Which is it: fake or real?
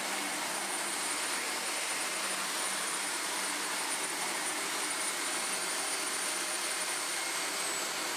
fake